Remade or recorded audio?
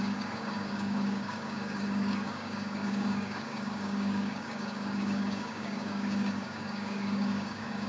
remade